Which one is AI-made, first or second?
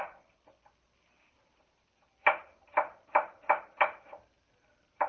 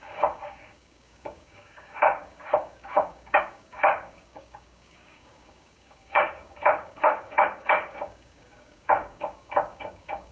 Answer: second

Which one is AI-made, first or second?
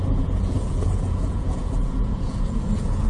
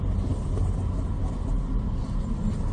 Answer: first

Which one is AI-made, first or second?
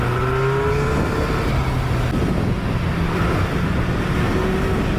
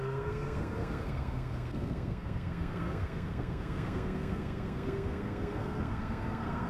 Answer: second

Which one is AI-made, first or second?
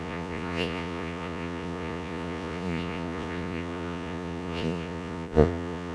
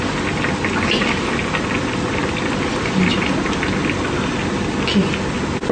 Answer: first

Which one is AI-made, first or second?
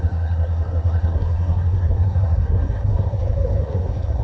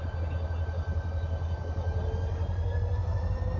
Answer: first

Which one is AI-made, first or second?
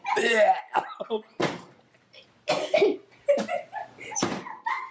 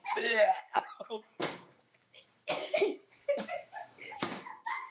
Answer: second